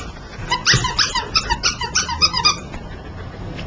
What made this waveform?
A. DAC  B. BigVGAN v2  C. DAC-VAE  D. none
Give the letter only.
D